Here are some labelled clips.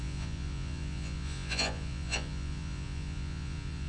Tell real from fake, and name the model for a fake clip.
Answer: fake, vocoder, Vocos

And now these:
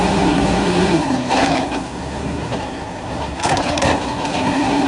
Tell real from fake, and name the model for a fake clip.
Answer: fake, codec, SNAC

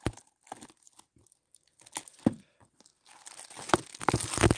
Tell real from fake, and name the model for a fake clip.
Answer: real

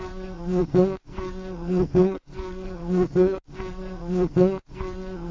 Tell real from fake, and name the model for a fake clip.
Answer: fake, codec, SNAC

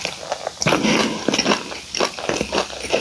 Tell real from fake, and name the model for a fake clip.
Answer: real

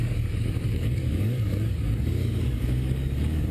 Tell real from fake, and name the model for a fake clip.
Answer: fake, codec, DAC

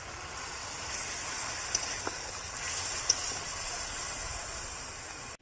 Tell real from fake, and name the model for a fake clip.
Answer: real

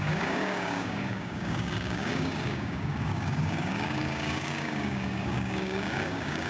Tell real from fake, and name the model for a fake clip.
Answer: fake, codec, DAC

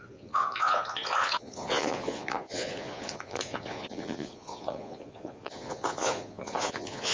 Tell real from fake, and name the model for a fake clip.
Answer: fake, vocoder, Vocos